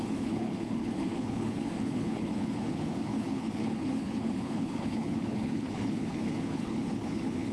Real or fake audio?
fake